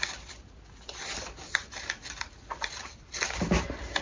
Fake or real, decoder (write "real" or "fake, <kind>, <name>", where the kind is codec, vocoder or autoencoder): real